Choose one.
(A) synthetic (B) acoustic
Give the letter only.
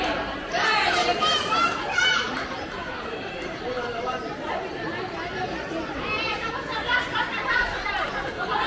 A